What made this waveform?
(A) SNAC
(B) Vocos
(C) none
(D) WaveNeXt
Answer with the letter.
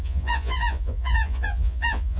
B